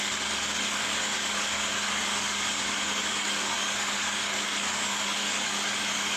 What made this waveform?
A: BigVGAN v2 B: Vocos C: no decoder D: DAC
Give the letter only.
D